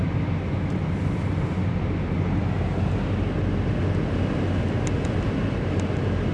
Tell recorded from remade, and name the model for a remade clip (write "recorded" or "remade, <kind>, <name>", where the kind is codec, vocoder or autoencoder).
recorded